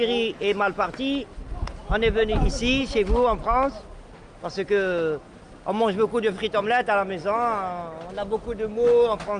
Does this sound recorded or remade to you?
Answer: recorded